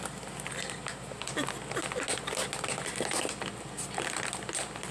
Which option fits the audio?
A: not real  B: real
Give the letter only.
B